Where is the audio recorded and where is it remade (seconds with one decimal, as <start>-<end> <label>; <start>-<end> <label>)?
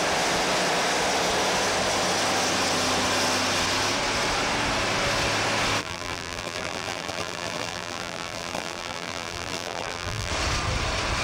0.0-5.8 recorded; 5.8-10.3 remade; 10.3-11.2 recorded